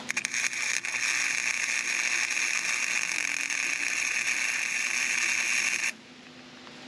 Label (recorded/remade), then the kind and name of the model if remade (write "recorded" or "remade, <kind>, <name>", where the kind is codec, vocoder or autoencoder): recorded